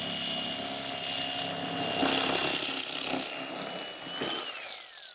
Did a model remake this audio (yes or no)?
no